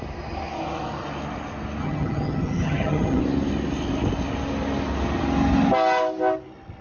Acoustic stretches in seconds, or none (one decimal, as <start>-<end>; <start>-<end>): 0.0-1.8; 3.2-6.8